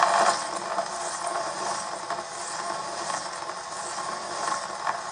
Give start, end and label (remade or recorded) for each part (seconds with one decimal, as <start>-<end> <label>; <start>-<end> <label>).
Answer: 0.0-5.1 recorded